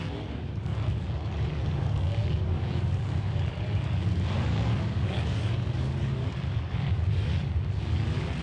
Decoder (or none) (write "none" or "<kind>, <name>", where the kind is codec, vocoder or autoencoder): codec, DAC